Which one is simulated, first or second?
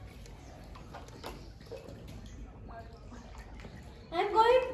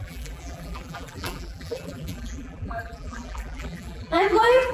second